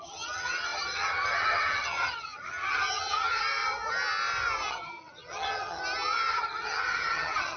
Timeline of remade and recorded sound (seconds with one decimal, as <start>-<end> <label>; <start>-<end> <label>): 0.0-3.4 remade; 3.4-4.7 recorded; 4.7-5.8 remade; 5.8-6.3 recorded; 6.3-7.6 remade